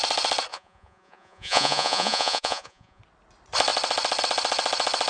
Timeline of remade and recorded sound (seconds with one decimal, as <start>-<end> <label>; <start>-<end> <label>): 0.0-0.5 recorded; 0.5-3.0 remade; 3.0-5.1 recorded